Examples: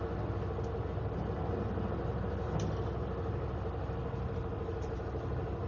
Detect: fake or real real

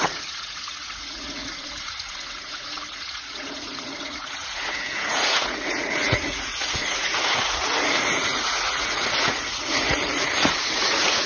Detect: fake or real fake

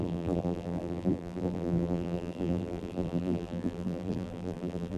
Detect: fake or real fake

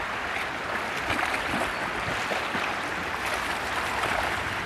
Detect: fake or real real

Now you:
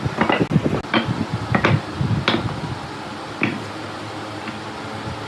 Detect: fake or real real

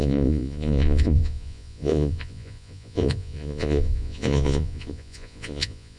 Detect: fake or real fake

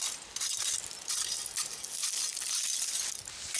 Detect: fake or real real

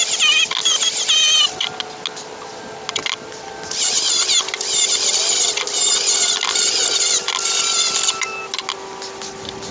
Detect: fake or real real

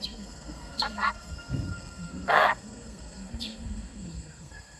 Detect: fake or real fake